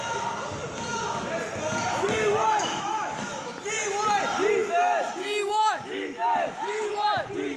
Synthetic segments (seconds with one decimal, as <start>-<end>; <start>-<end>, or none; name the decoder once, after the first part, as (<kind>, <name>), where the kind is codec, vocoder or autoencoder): 2.6-3.6 (autoencoder, DAC-VAE); 4.6-6.9

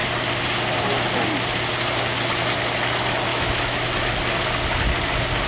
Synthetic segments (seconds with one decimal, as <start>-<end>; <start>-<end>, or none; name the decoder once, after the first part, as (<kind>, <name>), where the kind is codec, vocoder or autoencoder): 3.3-4.1 (autoencoder, DAC-VAE)